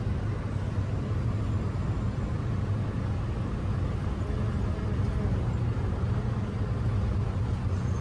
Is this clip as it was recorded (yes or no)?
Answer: yes